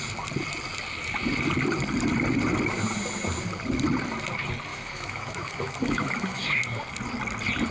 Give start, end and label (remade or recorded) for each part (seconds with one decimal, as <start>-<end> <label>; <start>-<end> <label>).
0.0-4.7 recorded; 4.7-6.6 remade; 6.6-7.7 recorded